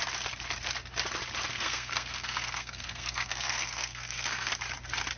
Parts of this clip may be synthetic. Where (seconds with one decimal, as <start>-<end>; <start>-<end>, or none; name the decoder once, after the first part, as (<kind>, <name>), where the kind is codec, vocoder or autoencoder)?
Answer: 1.5-4.5 (codec, SNAC)